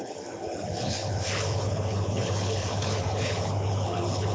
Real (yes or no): no